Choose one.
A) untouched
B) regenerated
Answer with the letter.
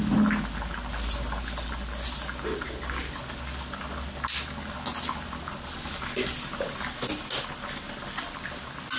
A